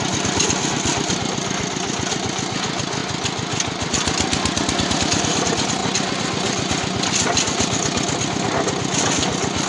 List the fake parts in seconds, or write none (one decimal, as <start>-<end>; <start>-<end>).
none